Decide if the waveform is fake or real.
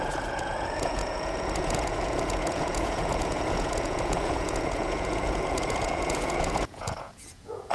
fake